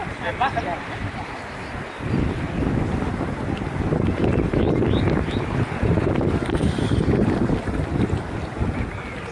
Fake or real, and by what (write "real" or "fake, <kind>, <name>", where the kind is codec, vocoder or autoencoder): real